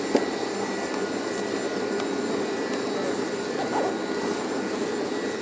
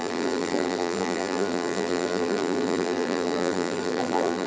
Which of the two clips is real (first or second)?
first